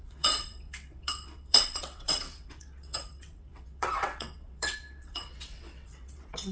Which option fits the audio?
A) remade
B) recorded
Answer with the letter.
A